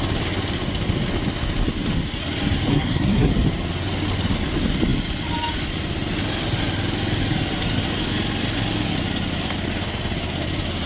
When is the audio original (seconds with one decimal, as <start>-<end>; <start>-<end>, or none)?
0.0-2.7; 3.3-10.9